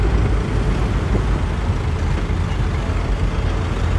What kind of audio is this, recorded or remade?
recorded